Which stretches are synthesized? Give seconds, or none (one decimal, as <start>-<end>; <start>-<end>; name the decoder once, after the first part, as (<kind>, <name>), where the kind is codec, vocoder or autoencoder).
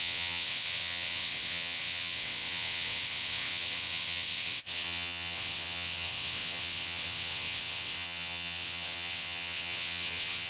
0.0-10.5 (vocoder, WaveNeXt)